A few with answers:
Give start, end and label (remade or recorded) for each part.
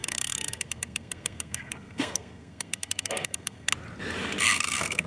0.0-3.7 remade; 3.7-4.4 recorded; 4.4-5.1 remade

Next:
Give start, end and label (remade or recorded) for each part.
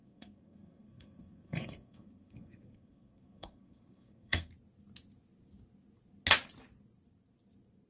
0.0-4.5 remade; 4.5-7.9 recorded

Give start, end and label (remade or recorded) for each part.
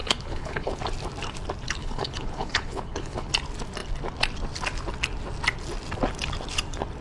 0.0-0.8 remade; 0.8-1.8 recorded; 1.8-3.3 remade; 3.3-7.0 recorded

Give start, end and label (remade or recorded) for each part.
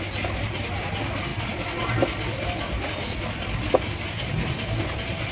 0.0-5.3 recorded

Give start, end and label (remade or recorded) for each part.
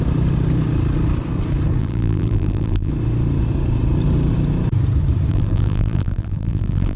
0.0-1.8 recorded; 1.8-2.9 remade; 2.9-5.3 recorded; 5.3-7.0 remade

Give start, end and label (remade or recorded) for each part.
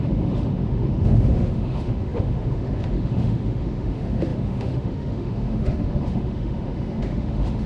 0.0-7.7 remade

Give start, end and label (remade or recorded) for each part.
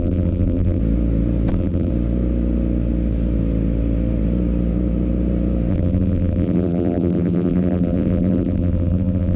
0.0-0.8 remade; 0.8-1.5 recorded; 1.5-1.9 remade; 1.9-5.7 recorded; 5.7-9.4 remade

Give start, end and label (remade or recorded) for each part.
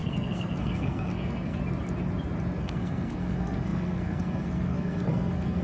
0.0-1.6 remade; 1.6-2.6 recorded; 2.6-5.6 remade